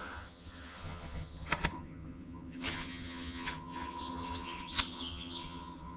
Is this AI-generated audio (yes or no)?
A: yes